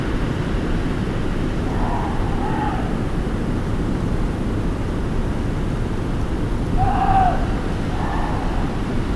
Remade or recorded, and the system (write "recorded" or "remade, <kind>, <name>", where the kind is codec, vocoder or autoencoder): recorded